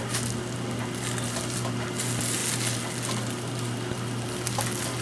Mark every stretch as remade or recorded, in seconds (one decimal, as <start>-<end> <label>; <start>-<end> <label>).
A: 0.0-5.0 recorded